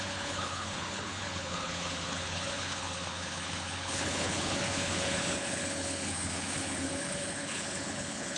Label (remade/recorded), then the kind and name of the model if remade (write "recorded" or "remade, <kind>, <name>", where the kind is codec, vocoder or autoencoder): remade, codec, HILCodec